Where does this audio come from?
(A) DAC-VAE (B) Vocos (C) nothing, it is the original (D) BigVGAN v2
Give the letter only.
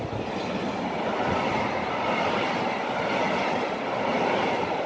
C